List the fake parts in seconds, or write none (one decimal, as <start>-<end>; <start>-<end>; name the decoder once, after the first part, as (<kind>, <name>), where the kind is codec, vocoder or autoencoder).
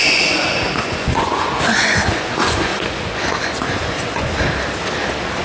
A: 0.0-4.3 (vocoder, Vocos)